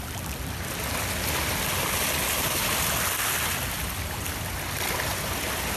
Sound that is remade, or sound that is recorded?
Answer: recorded